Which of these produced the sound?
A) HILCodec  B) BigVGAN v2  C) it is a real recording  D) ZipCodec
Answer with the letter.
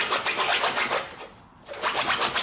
C